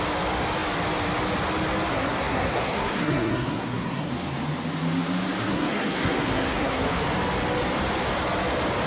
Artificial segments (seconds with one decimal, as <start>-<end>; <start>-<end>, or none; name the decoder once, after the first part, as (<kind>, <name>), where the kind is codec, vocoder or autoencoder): 1.9-4.1 (codec, SNAC); 5.5-6.8